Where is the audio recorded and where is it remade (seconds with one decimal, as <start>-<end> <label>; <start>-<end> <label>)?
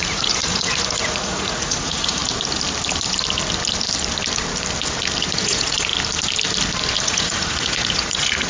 0.0-2.2 remade; 2.2-5.3 recorded; 5.3-5.9 remade; 5.9-7.0 recorded; 7.0-8.5 remade